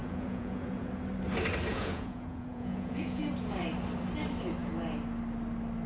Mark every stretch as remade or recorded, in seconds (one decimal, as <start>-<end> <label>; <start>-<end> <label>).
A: 0.0-0.9 remade; 0.9-1.7 recorded; 1.7-3.3 remade; 3.3-5.9 recorded

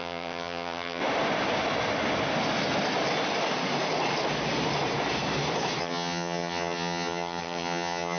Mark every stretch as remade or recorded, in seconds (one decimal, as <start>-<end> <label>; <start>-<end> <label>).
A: 0.0-1.0 remade; 1.0-5.8 recorded; 5.8-8.2 remade

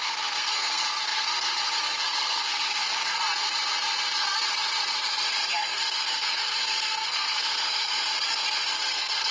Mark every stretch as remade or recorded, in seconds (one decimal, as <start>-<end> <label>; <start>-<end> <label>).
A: 0.0-3.2 remade; 3.2-5.7 recorded; 5.7-7.9 remade; 7.9-8.7 recorded; 8.7-9.3 remade

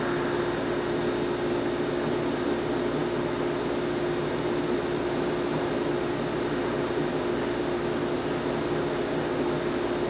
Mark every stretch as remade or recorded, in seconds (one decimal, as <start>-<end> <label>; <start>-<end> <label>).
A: 0.0-10.1 recorded